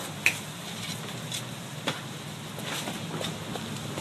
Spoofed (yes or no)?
no